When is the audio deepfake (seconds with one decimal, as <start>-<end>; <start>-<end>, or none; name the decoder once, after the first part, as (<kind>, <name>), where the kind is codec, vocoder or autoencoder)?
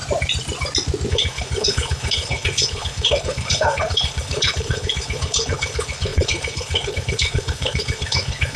1.1-8.6 (codec, HILCodec)